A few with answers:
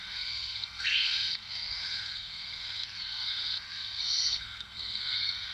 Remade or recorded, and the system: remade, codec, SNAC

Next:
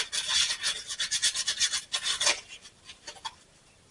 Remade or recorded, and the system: recorded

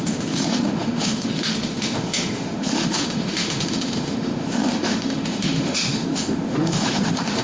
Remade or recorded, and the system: remade, autoencoder, DAC-VAE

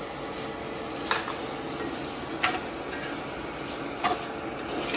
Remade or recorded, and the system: recorded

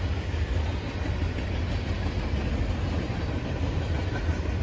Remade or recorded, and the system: recorded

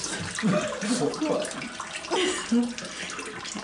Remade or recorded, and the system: recorded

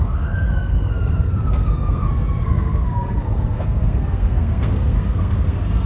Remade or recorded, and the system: remade, codec, SNAC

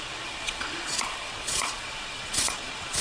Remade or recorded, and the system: remade, vocoder, Vocos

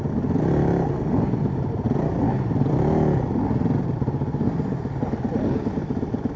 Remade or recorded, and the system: recorded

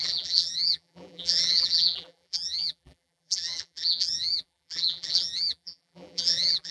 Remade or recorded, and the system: remade, vocoder, BigVGAN v2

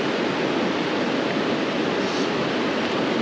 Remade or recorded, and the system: recorded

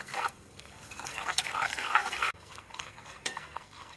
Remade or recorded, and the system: remade, codec, SNAC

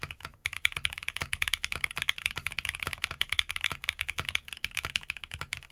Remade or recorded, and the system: remade, codec, DAC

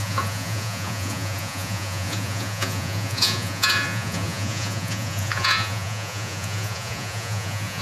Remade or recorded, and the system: remade, vocoder, Vocos